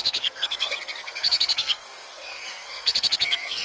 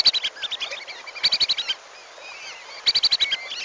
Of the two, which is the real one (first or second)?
second